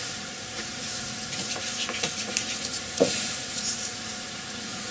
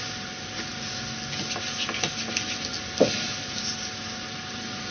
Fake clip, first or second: first